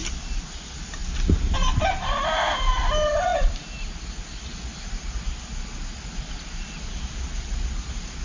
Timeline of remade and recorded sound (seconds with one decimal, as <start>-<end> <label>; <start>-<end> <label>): 0.0-8.2 recorded